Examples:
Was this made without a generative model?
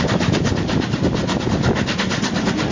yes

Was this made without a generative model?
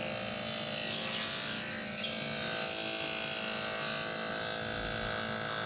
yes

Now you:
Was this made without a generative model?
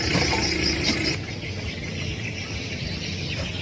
yes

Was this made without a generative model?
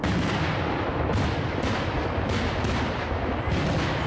yes